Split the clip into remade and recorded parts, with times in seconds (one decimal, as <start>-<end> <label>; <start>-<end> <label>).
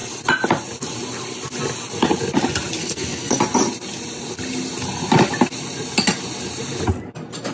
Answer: 0.0-2.8 recorded; 2.8-3.4 remade; 3.4-7.5 recorded